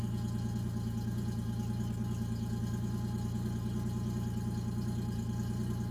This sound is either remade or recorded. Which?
recorded